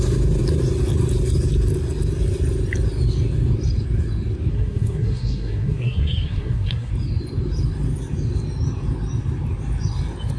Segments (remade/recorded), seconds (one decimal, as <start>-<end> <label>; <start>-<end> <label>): 0.0-4.5 recorded; 4.5-6.9 remade; 6.9-10.4 recorded

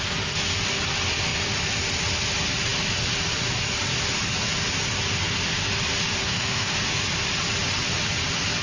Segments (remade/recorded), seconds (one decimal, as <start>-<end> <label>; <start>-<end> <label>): 0.0-6.2 recorded; 6.2-6.7 remade; 6.7-8.6 recorded

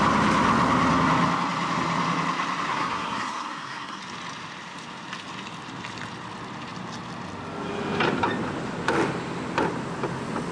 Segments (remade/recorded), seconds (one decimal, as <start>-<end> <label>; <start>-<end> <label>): 0.0-2.7 recorded; 2.7-4.0 remade; 4.0-10.5 recorded

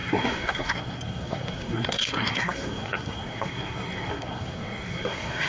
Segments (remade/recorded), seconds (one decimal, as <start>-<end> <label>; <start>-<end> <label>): 0.0-5.5 remade

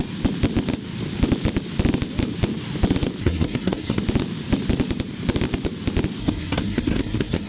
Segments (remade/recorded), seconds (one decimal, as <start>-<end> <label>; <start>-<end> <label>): 0.0-3.2 recorded; 3.2-4.0 remade; 4.0-6.2 recorded; 6.2-7.5 remade

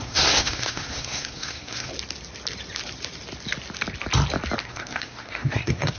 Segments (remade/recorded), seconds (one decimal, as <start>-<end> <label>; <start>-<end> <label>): 0.0-1.9 remade; 1.9-4.6 recorded; 4.6-6.0 remade

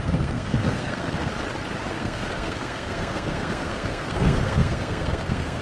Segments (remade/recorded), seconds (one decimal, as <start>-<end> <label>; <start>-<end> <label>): 0.0-1.3 remade; 1.3-1.9 recorded; 1.9-5.6 remade